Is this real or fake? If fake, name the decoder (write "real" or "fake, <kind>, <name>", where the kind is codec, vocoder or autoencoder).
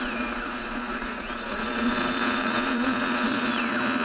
fake, vocoder, Vocos